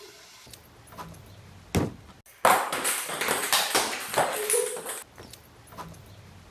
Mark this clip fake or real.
real